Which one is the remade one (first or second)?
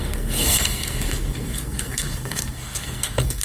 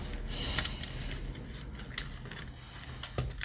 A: first